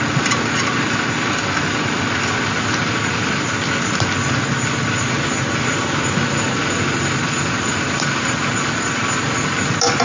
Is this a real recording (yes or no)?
yes